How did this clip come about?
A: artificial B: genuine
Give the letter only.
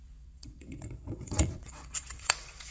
A